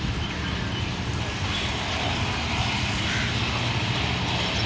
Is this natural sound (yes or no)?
yes